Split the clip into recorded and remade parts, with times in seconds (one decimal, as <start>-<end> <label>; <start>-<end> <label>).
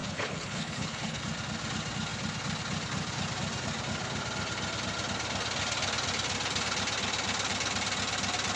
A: 0.0-1.2 remade; 1.2-8.6 recorded